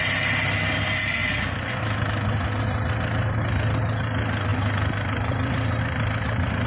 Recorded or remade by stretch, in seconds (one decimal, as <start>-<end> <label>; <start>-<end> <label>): 0.0-1.2 recorded; 1.2-1.8 remade; 1.8-4.5 recorded; 4.5-5.8 remade; 5.8-6.7 recorded

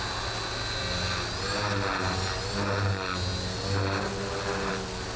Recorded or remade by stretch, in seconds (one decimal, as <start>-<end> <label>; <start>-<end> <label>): 0.0-5.2 recorded

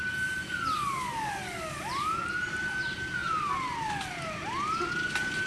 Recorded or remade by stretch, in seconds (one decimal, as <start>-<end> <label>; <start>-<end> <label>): 0.0-5.5 recorded

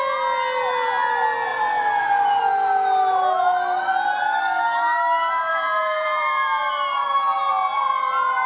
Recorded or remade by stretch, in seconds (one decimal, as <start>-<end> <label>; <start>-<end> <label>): 0.0-1.5 recorded; 1.5-2.4 remade; 2.4-5.5 recorded; 5.5-7.5 remade; 7.5-8.5 recorded

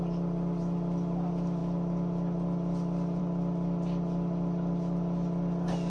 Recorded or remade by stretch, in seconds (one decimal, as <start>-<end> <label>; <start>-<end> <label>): 0.0-5.9 recorded

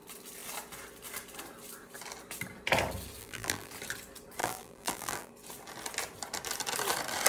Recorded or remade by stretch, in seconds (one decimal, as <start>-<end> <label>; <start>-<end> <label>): 0.0-3.2 recorded; 3.2-3.7 remade; 3.7-4.4 recorded; 4.4-5.3 remade; 5.3-7.3 recorded

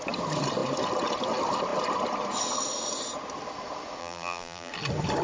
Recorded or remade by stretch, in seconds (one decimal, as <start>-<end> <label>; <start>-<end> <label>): 0.0-4.0 recorded; 4.0-4.7 remade; 4.7-5.2 recorded

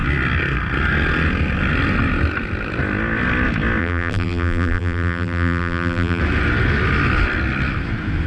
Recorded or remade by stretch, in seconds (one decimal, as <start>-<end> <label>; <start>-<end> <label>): 0.0-3.8 recorded; 3.8-6.2 remade; 6.2-8.3 recorded